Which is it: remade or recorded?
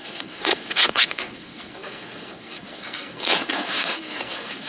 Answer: remade